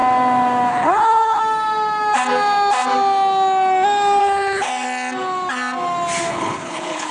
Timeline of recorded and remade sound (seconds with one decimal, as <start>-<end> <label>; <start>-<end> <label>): 0.0-0.7 recorded; 0.7-1.4 remade; 1.4-4.2 recorded; 4.2-4.7 remade; 4.7-6.3 recorded; 6.3-7.1 remade